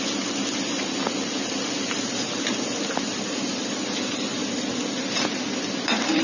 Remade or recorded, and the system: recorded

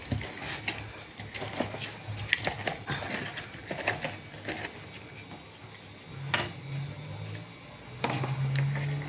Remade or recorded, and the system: recorded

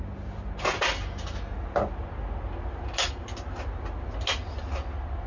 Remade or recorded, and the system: recorded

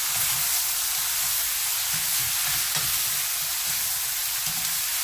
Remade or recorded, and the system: recorded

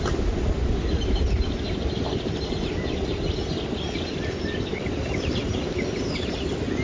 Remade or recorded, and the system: recorded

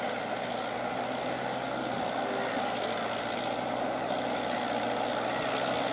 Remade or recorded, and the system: recorded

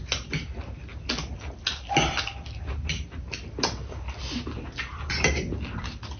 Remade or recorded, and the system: recorded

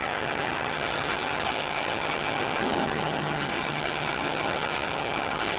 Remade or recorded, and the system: remade, vocoder, HiFi-GAN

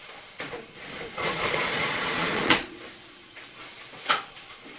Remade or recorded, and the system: remade, vocoder, Vocos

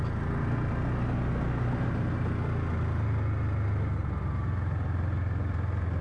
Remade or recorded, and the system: recorded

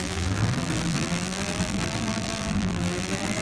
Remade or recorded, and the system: remade, vocoder, BigVGAN v2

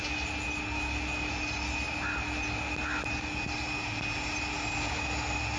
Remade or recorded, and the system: recorded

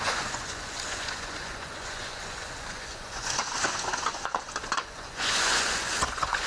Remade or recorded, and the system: remade, vocoder, Vocos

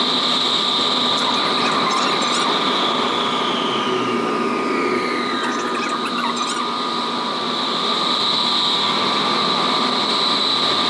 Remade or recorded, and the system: recorded